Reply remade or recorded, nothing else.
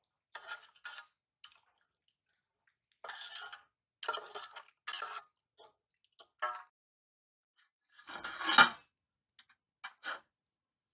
recorded